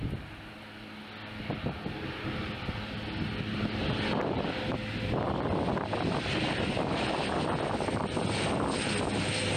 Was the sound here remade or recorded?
recorded